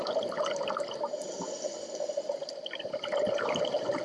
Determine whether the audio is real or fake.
real